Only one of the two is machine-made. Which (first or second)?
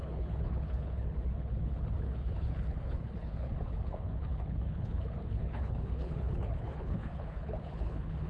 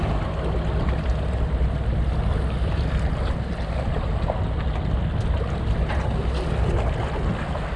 first